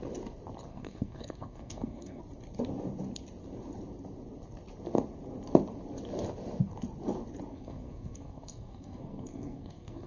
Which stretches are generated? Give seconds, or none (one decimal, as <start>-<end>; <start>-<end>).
0.7-2.2; 7.5-10.1